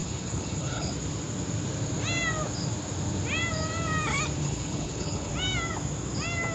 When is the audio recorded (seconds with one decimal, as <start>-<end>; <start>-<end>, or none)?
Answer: 0.9-4.4; 5.3-6.5